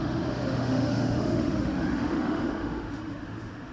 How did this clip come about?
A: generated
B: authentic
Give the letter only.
A